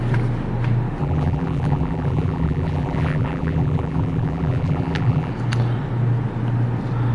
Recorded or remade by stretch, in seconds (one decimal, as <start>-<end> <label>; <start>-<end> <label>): 0.0-1.0 recorded; 1.0-5.3 remade; 5.3-7.1 recorded